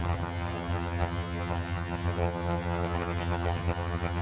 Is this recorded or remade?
remade